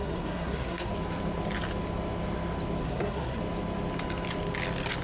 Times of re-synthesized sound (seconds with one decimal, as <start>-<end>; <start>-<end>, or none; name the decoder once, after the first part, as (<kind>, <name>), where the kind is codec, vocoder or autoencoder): 0.0-0.9 (codec, SNAC); 2.8-3.4